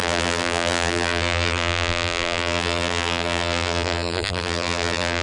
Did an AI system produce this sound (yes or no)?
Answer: yes